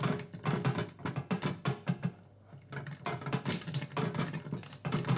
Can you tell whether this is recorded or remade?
recorded